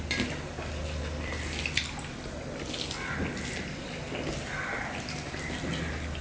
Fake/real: real